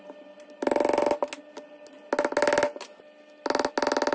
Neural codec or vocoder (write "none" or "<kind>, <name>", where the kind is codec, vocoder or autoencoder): none